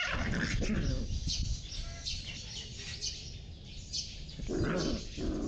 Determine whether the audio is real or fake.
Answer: real